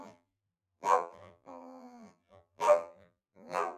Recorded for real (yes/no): no